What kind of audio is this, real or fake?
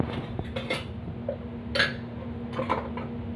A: real